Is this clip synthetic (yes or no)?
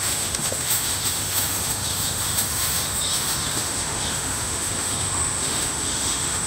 yes